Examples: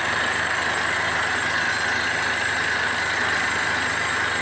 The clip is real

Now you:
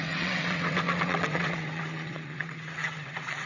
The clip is fake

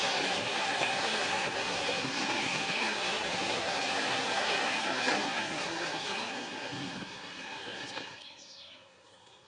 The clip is fake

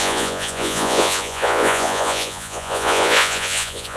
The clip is fake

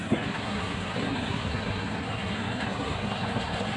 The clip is fake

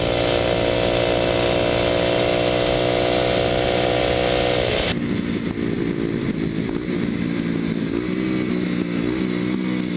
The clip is real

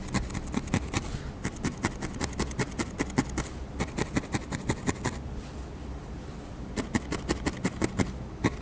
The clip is real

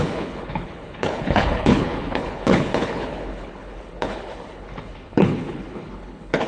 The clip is fake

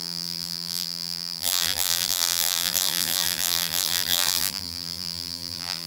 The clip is fake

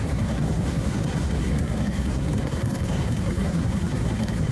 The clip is fake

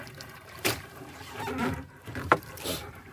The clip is fake